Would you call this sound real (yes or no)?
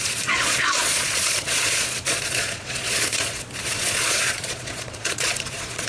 no